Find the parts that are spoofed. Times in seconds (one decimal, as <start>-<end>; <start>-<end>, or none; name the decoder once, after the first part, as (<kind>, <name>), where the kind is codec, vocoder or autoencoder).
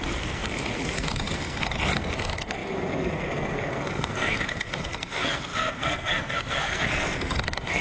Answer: 0.0-7.8 (codec, SNAC)